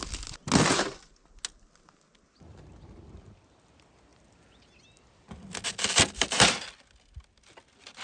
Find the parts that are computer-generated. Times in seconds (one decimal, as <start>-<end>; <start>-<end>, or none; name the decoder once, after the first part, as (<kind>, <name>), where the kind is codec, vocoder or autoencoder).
none